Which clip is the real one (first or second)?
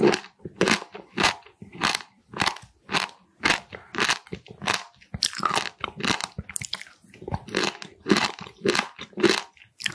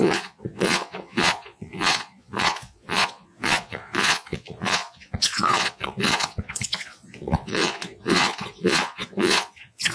first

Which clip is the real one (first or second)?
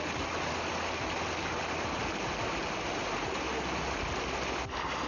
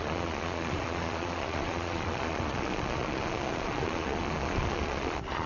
first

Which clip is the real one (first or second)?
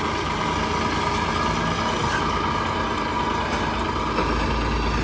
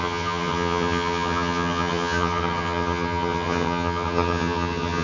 first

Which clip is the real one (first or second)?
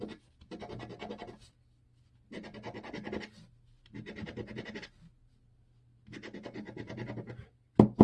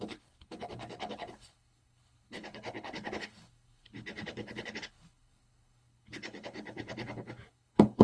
first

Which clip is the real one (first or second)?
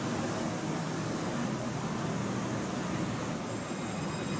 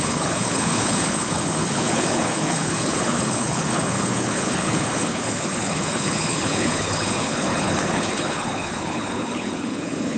first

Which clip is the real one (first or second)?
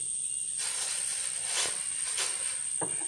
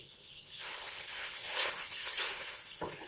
first